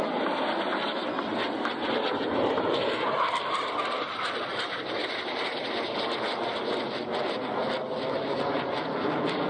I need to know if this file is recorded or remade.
recorded